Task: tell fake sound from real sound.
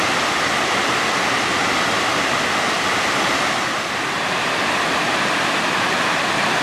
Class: real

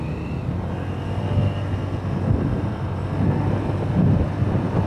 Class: real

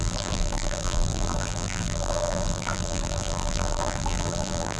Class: fake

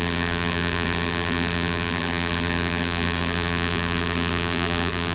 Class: fake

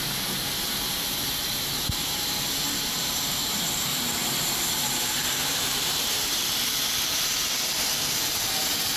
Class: fake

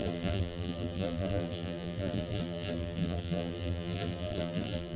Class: fake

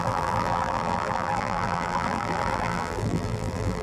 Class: fake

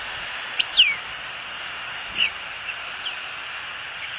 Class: fake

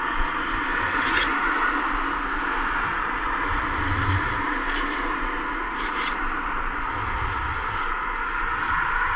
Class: real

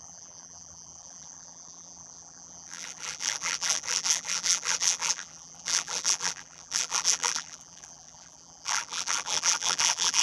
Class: fake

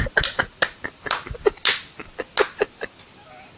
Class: real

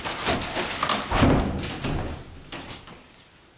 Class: real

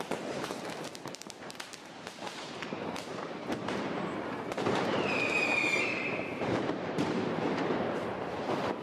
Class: fake